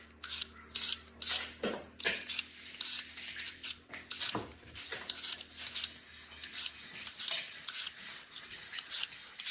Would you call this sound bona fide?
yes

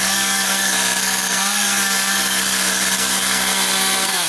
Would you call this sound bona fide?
no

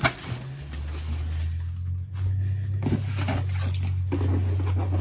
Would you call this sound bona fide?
yes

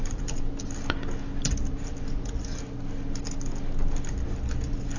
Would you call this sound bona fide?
yes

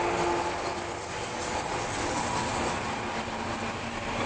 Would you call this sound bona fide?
yes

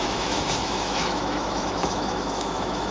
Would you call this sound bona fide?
no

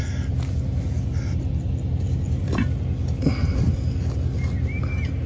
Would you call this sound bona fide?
yes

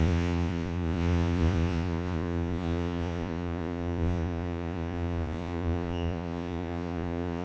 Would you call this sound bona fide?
no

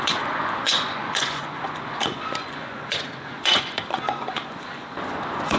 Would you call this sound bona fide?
no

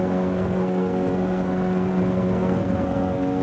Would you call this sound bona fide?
no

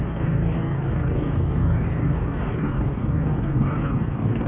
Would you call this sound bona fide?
no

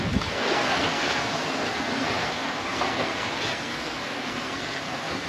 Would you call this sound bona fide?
no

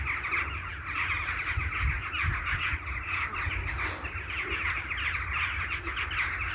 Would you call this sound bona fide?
yes